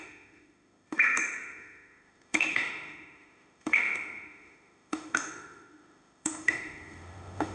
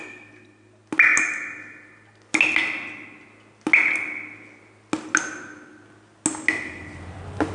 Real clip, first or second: second